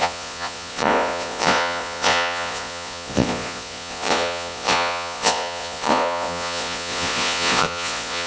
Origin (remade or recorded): remade